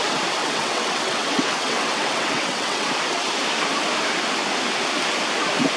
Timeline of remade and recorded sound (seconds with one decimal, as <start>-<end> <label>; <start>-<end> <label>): 0.0-0.4 recorded; 0.4-2.9 remade; 2.9-5.8 recorded

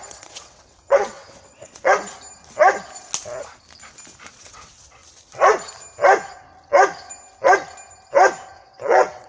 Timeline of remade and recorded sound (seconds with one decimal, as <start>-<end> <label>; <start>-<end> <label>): 0.0-2.0 remade; 2.0-4.3 recorded; 4.3-5.0 remade; 5.0-8.6 recorded; 8.6-9.3 remade

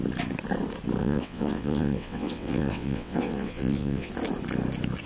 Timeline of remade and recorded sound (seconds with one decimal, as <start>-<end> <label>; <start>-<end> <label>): 0.0-1.0 recorded; 1.0-4.1 remade; 4.1-5.1 recorded

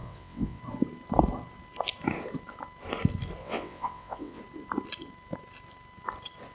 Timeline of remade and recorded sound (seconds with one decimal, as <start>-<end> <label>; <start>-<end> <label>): 0.0-0.6 remade; 0.6-3.4 recorded; 3.4-4.4 remade; 4.4-6.5 recorded

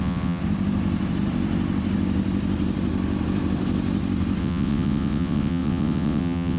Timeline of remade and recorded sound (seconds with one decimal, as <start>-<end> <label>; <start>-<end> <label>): 0.0-0.4 remade; 0.4-4.4 recorded; 4.4-6.6 remade

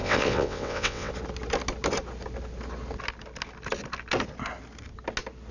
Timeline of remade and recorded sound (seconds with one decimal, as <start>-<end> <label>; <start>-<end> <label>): 0.0-1.1 remade; 1.1-5.5 recorded